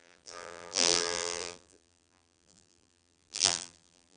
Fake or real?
fake